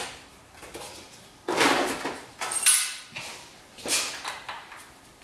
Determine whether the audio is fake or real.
real